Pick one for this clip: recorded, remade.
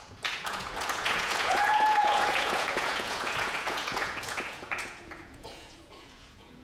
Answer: remade